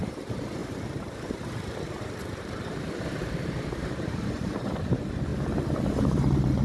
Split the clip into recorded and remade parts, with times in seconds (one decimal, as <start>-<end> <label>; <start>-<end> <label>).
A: 0.0-5.3 remade; 5.3-5.8 recorded; 5.8-6.6 remade